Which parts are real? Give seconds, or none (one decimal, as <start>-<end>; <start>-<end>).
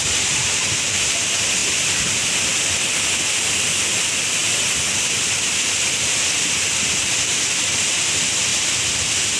0.0-8.5